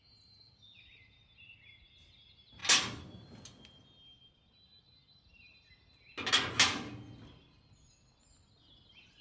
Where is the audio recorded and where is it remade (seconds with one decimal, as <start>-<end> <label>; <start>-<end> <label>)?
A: 0.0-9.2 recorded